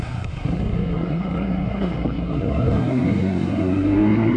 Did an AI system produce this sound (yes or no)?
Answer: yes